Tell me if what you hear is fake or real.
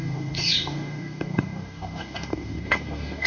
fake